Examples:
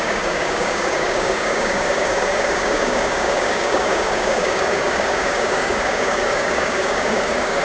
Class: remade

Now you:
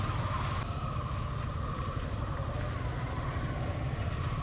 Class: recorded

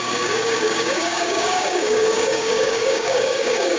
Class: remade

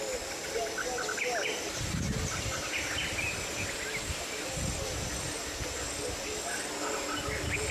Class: recorded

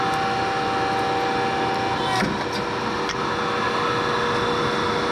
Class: recorded